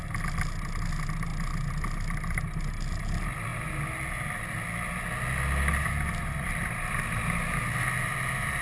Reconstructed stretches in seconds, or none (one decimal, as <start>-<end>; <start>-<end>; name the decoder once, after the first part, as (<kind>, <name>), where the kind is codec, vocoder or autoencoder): none